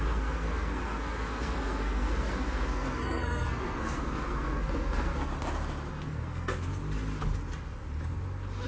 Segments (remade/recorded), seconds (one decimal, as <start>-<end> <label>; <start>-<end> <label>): 0.0-5.3 remade; 5.3-5.9 recorded; 5.9-6.8 remade; 6.8-8.7 recorded